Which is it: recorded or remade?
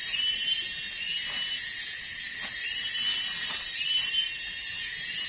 recorded